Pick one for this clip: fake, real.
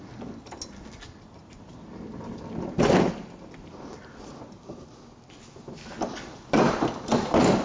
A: real